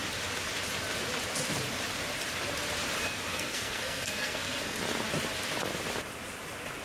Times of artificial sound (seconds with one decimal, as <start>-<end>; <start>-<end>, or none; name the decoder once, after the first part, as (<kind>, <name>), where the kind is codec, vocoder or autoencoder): 3.3-4.8 (codec, SNAC)